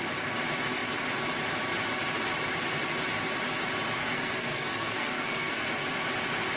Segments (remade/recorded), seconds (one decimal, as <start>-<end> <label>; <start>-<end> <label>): 0.0-4.0 recorded; 4.0-5.7 remade; 5.7-6.6 recorded